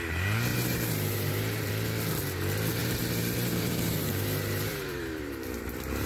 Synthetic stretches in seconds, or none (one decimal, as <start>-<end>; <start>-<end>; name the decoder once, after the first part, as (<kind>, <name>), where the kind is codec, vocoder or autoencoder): 0.5-1.7 (vocoder, BigVGAN v2); 2.8-6.1